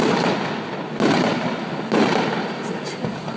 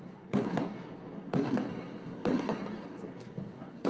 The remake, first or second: second